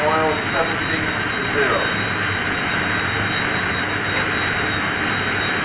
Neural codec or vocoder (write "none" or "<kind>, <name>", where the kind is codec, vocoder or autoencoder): none